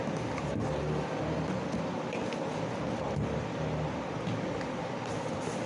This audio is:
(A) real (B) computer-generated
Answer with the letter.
A